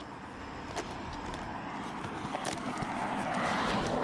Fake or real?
real